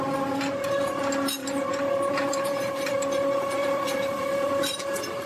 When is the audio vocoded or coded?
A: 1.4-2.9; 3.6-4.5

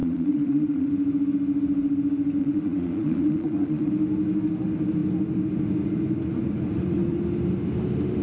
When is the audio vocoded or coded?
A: 0.0-0.9; 2.4-3.9

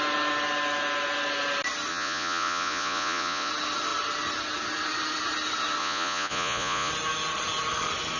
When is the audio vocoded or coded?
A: 1.9-3.5; 5.8-6.9

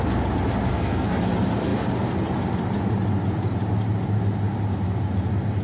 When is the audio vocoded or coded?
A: 0.7-1.2